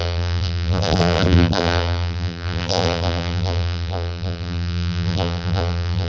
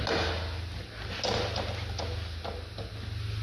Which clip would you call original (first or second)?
second